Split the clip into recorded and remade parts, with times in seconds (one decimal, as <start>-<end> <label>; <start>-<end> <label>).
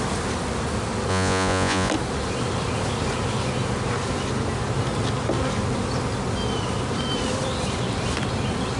0.0-1.1 recorded; 1.1-1.9 remade; 1.9-8.8 recorded